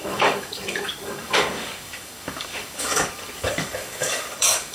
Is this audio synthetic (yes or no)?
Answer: yes